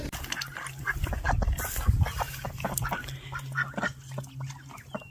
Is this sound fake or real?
real